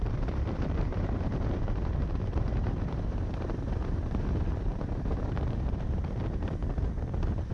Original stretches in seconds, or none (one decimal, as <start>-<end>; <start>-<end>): 6.6-7.5

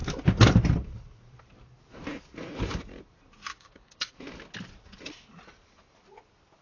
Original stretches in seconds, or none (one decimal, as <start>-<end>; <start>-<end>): 0.0-3.5; 4.2-6.6